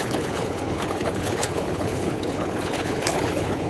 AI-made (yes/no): yes